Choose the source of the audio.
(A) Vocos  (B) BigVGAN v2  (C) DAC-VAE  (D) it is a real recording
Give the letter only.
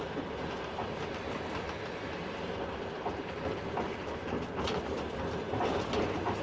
D